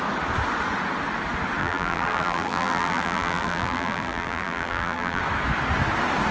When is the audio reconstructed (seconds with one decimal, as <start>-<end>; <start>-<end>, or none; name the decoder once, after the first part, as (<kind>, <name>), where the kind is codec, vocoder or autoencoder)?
1.6-5.2 (vocoder, BigVGAN v2)